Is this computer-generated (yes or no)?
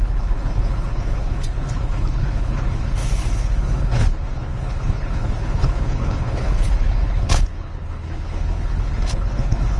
yes